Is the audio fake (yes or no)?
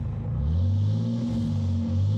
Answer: no